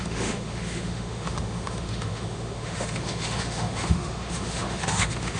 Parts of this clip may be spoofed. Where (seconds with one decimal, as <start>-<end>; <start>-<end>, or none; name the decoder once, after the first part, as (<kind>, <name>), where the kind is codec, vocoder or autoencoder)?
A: 0.0-5.4 (autoencoder, DAC-VAE)